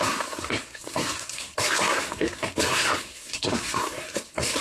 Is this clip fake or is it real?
fake